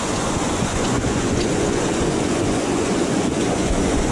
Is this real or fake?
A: fake